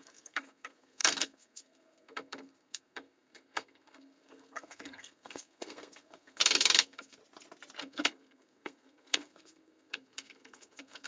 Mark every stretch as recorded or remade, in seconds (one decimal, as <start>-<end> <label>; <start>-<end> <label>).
0.0-7.2 remade; 7.2-7.8 recorded; 7.8-11.1 remade